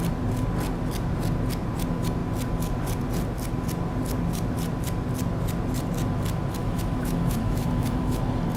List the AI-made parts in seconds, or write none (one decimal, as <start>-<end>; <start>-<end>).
6.6-8.2